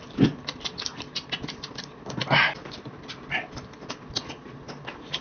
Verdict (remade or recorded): recorded